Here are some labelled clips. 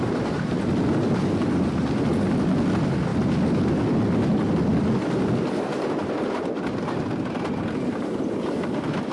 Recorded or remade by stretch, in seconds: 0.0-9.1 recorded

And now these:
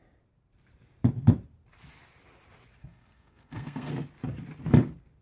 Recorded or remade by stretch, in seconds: 0.0-2.8 recorded; 2.8-3.9 remade; 3.9-5.2 recorded

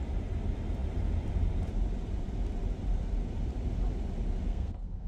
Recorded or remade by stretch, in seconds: 0.0-4.5 recorded; 4.5-5.1 remade

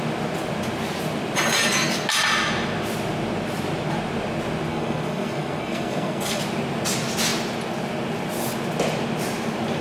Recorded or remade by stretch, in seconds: 0.0-4.7 recorded; 4.7-6.4 remade; 6.4-9.8 recorded

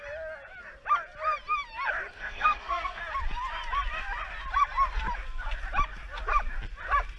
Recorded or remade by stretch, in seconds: 0.0-2.1 recorded; 2.1-3.0 remade; 3.0-7.2 recorded